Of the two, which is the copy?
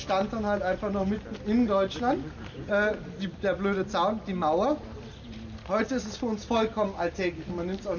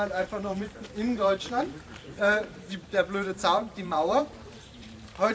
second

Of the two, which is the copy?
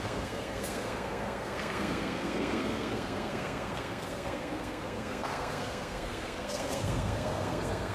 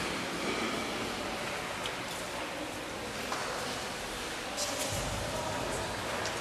first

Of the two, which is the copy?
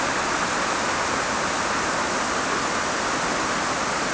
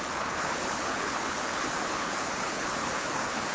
second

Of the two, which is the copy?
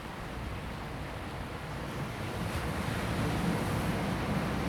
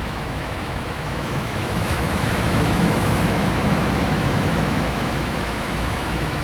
second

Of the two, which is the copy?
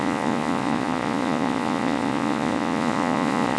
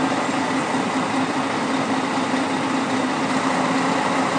first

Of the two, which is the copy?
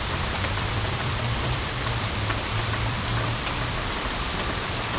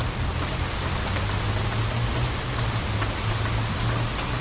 first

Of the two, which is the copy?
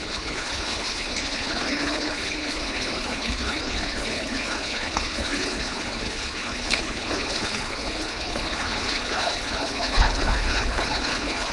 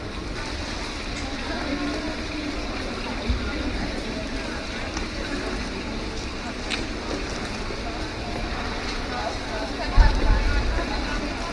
first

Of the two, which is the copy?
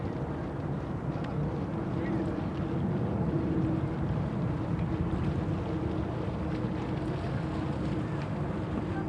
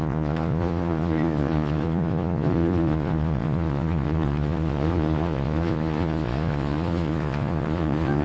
second